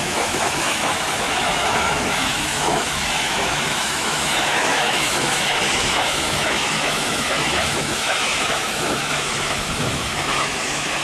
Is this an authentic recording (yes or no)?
no